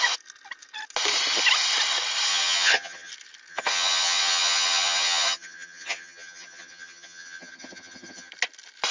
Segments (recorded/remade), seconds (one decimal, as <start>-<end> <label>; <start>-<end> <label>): 0.0-2.3 recorded; 2.3-3.1 remade; 3.1-3.5 recorded; 3.5-8.3 remade; 8.3-8.9 recorded